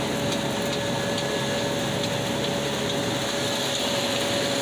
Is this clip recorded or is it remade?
recorded